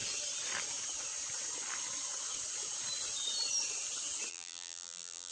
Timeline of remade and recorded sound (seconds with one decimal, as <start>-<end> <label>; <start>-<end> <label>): 0.0-4.3 recorded; 4.3-5.3 remade